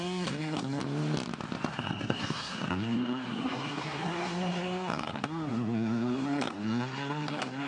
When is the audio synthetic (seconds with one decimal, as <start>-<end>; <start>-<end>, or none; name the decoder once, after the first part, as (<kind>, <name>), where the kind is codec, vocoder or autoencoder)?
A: 0.0-0.8 (codec, SNAC); 1.7-7.7